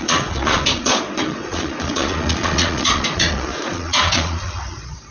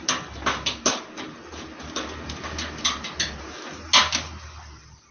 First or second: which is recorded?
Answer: second